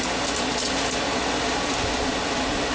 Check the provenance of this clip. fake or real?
real